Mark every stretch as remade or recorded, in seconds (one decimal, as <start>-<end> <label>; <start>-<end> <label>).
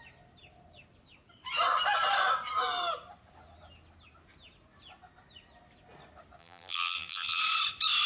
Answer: 0.0-6.4 recorded; 6.4-7.4 remade; 7.4-8.1 recorded